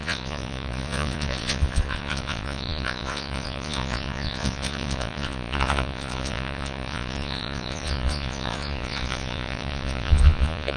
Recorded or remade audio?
remade